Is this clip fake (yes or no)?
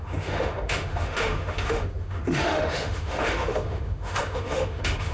yes